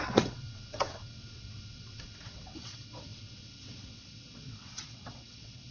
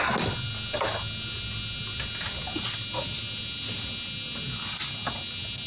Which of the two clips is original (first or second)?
second